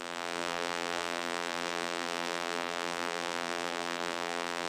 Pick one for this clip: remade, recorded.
remade